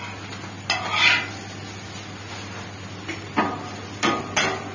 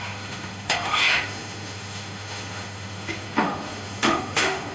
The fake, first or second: second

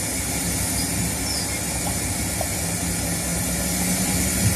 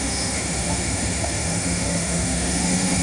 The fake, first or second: second